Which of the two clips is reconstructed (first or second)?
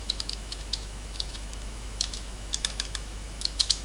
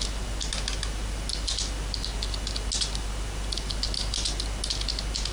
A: first